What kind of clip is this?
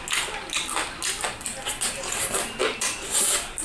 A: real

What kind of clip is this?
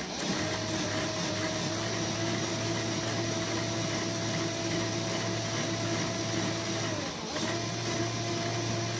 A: real